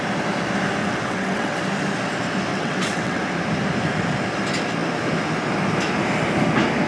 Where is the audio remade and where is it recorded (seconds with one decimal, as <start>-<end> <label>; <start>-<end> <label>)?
0.0-0.8 recorded; 0.8-1.6 remade; 1.6-2.5 recorded; 2.5-3.2 remade; 3.2-6.9 recorded